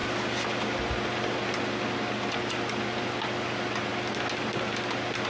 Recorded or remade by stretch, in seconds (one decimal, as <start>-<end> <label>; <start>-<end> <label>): 0.0-5.3 recorded